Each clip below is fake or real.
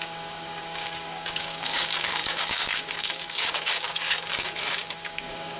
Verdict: fake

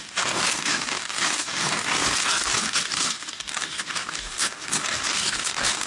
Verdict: fake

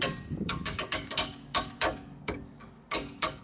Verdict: fake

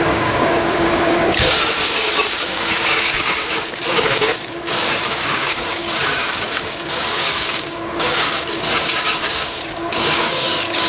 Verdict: fake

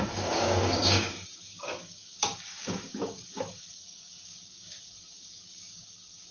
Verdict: fake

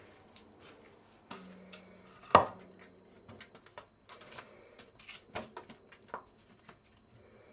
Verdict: real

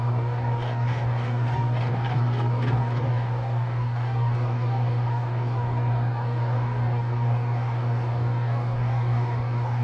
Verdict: fake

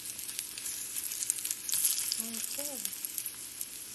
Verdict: real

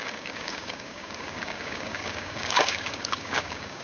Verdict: fake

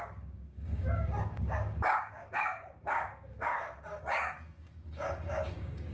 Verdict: fake